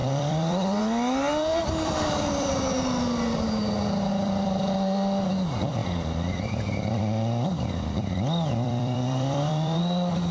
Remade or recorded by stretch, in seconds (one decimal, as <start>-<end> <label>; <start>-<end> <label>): 0.0-0.8 remade; 0.8-1.6 recorded; 1.6-2.5 remade; 2.5-4.1 recorded; 4.1-4.7 remade; 4.7-5.8 recorded; 5.8-9.8 remade; 9.8-10.3 recorded